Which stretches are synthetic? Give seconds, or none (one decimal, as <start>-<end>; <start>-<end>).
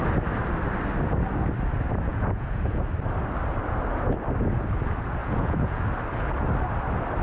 2.1-2.8; 5.2-5.8